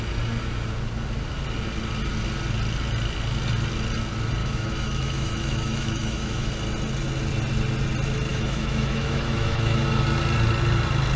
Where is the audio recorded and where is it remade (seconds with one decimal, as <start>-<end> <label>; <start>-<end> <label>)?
0.0-4.4 recorded; 4.4-6.5 remade; 6.5-8.3 recorded; 8.3-9.8 remade; 9.8-11.2 recorded